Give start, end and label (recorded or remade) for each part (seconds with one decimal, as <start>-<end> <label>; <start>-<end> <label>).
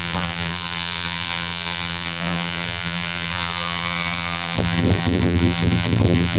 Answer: 0.0-6.4 remade